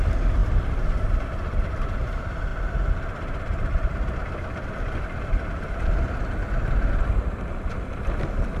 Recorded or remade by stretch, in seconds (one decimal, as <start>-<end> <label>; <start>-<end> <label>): 0.0-8.6 recorded